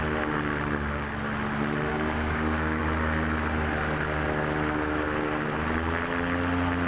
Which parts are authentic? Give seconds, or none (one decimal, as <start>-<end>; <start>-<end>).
0.0-1.9; 2.8-6.9